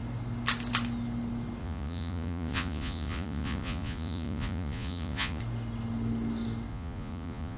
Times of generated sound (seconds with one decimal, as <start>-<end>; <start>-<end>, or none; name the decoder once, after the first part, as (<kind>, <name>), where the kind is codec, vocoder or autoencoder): 1.6-5.4 (vocoder, Vocos); 6.7-7.6